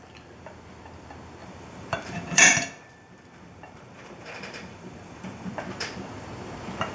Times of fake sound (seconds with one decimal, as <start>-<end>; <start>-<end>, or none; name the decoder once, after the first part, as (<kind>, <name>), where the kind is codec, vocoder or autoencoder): 1.4-5.5 (vocoder, BigVGAN v2)